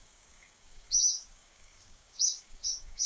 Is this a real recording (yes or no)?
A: no